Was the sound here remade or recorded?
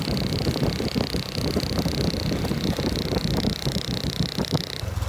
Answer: recorded